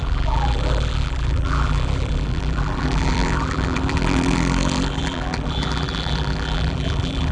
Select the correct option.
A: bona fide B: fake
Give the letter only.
B